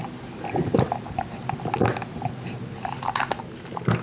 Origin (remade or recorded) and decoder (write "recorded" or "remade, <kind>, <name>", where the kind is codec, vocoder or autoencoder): recorded